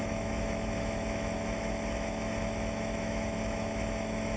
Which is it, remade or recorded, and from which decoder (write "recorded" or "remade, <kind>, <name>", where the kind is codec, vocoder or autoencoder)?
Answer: remade, autoencoder, DAC-VAE